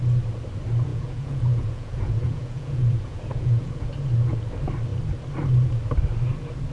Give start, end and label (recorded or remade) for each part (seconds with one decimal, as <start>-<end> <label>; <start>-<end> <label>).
0.0-0.9 recorded; 0.9-3.9 remade; 3.9-6.7 recorded